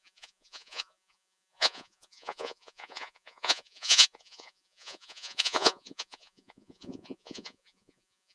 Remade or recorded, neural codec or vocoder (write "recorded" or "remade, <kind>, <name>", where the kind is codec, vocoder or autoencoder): remade, vocoder, Vocos